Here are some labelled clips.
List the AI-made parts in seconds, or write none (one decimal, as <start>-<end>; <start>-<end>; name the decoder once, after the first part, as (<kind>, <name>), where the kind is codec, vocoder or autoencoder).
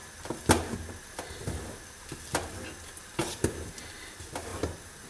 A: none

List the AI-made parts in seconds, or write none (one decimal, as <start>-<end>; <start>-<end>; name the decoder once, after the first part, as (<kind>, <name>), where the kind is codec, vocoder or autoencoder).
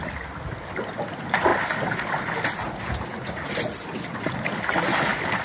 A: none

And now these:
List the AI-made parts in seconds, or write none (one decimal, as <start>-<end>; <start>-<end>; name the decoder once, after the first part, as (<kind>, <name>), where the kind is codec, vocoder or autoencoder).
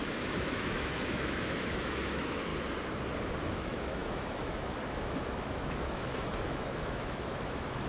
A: 0.0-2.5 (autoencoder, DAC-VAE); 3.4-7.9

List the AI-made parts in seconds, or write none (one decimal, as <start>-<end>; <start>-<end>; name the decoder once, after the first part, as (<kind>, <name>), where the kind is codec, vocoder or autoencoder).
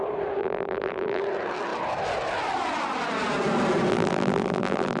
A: 0.4-1.2 (vocoder, BigVGAN v2); 3.9-5.0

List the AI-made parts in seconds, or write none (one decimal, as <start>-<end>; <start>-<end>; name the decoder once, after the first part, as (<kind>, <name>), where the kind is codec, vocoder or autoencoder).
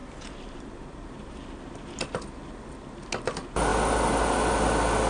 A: 0.0-1.4 (vocoder, BigVGAN v2)